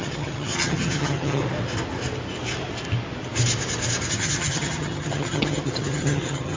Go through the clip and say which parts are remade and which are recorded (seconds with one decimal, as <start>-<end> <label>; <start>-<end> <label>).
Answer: 0.0-1.4 remade; 1.4-4.1 recorded; 4.1-6.6 remade